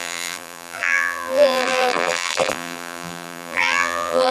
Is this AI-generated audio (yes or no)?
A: yes